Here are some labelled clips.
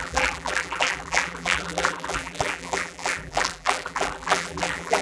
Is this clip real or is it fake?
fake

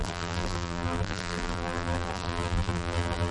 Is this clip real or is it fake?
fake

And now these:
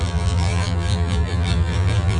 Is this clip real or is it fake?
fake